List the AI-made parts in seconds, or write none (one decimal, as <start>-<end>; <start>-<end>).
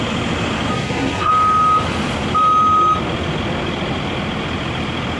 0.7-1.3